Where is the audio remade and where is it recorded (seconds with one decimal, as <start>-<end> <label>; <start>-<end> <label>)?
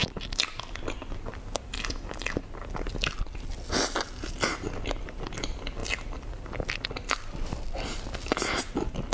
0.0-9.1 recorded